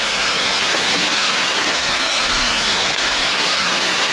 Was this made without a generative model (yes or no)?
no